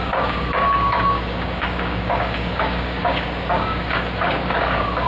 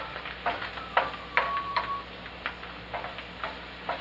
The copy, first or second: first